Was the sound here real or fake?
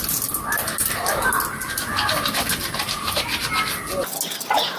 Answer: real